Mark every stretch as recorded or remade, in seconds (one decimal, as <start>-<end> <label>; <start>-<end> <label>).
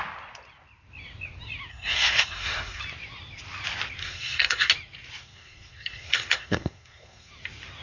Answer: 0.0-1.7 recorded; 1.7-2.8 remade; 2.8-4.0 recorded; 4.0-4.7 remade; 4.7-5.2 recorded; 5.2-7.3 remade; 7.3-7.8 recorded